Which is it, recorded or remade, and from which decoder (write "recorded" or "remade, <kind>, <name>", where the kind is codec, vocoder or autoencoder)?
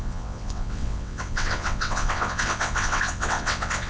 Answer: remade, vocoder, WaveNeXt